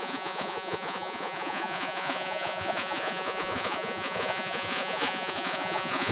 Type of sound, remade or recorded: remade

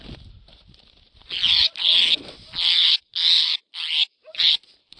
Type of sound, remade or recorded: recorded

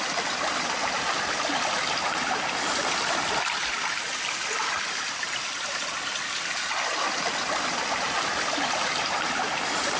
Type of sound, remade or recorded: recorded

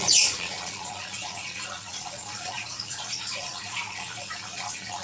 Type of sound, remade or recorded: remade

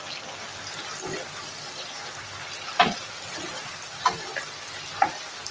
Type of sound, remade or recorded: recorded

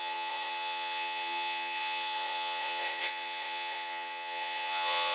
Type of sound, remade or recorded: remade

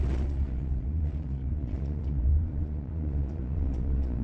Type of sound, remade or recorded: remade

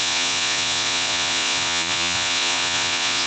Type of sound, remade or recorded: remade